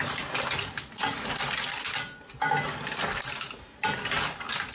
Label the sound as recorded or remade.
recorded